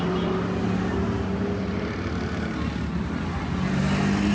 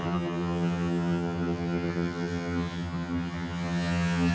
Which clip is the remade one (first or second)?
second